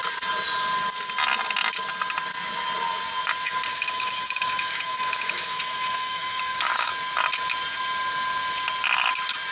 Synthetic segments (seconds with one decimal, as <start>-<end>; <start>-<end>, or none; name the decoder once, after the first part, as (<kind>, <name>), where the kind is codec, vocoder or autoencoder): 3.7-6.9 (autoencoder, DAC-VAE)